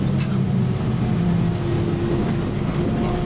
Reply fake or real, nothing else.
real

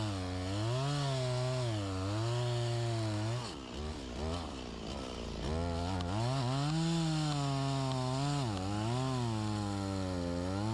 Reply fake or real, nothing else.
real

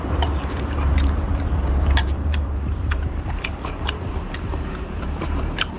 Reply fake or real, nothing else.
fake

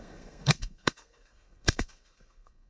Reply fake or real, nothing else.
fake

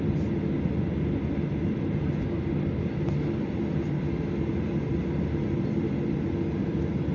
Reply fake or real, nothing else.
real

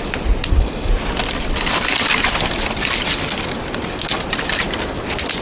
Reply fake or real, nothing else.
real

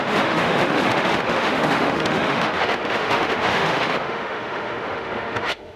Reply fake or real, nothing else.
fake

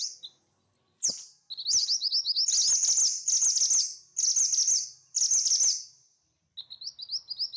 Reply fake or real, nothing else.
real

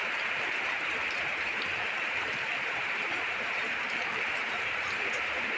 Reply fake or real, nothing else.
fake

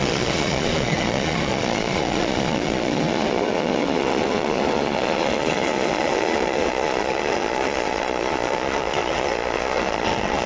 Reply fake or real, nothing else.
fake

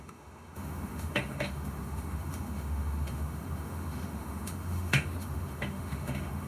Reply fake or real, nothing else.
fake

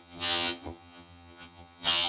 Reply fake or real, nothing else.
fake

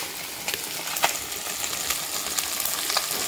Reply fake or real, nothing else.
real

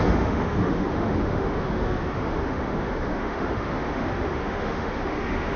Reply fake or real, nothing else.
fake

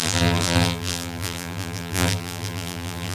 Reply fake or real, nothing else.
fake